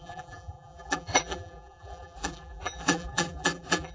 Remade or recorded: remade